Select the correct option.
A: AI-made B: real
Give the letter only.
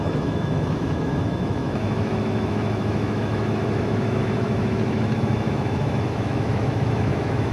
A